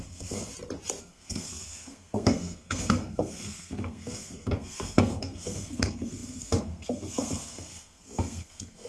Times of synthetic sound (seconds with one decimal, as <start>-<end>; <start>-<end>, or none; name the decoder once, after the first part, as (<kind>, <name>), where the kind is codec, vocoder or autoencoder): 0.0-0.5 (codec, SNAC); 1.0-8.9